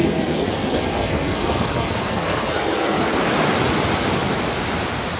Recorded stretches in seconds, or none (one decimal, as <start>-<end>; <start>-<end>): 3.1-5.2